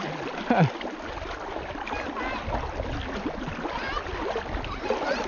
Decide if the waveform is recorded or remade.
recorded